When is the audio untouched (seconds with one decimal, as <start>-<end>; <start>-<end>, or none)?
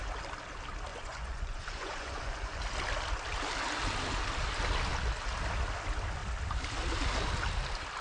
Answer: 0.0-0.9; 2.6-8.0